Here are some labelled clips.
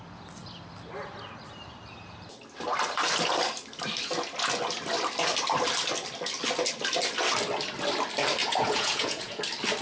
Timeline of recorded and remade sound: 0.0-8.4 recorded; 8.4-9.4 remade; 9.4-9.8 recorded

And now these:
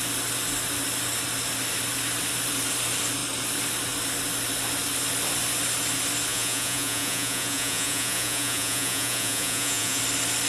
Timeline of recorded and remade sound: 0.0-6.3 recorded; 6.3-10.0 remade; 10.0-10.5 recorded